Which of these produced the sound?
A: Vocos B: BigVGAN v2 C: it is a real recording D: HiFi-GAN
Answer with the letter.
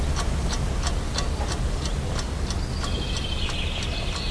C